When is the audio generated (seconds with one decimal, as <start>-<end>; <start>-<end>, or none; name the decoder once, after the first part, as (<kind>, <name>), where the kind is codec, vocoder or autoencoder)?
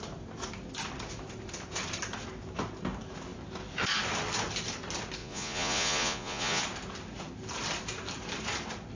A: 5.2-6.6 (vocoder, Vocos)